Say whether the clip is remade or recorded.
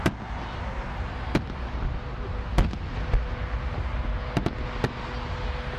recorded